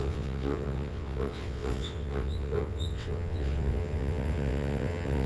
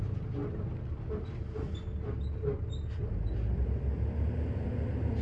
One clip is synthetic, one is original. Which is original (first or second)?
second